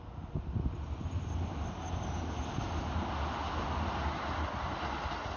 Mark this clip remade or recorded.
recorded